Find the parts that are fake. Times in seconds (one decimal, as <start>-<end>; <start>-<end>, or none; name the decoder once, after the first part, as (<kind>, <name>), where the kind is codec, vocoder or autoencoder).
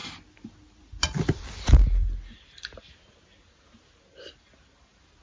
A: none